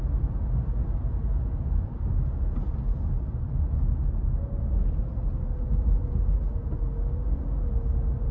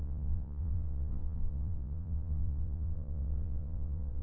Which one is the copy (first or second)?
second